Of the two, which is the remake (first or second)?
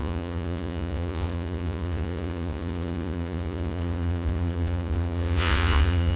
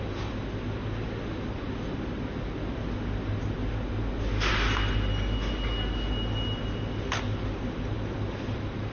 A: first